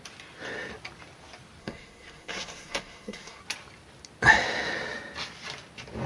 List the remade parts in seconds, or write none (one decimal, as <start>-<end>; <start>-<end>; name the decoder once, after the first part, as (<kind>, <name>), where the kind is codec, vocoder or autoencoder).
1.6-3.4 (codec, SNAC)